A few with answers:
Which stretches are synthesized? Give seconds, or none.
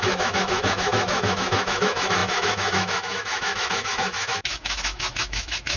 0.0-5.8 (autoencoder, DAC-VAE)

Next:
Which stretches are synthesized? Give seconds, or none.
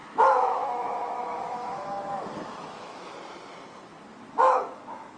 0.0-3.1 (autoencoder, DAC-VAE); 4.1-5.2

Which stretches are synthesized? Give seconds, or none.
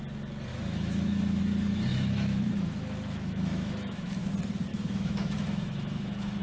0.5-1.4 (autoencoder, DAC-VAE); 1.9-4.3; 4.7-6.4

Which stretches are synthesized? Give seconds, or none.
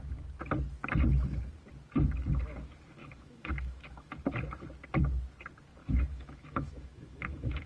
3.0-4.1 (autoencoder, DAC-VAE); 5.8-7.7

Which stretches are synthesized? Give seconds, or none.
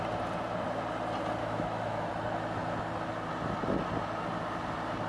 1.4-2.1 (autoencoder, DAC-VAE)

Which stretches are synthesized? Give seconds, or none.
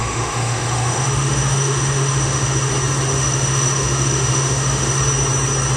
0.0-2.7 (autoencoder, DAC-VAE); 3.1-5.0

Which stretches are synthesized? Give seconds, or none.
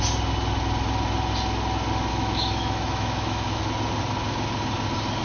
2.1-3.6 (autoencoder, DAC-VAE)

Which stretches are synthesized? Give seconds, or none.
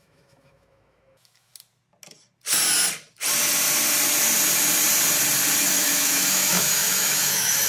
0.0-1.5 (autoencoder, DAC-VAE); 5.6-7.7